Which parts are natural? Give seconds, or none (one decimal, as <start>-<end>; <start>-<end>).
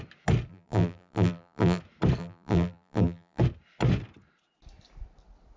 0.0-0.5; 1.8-2.2; 3.4-5.6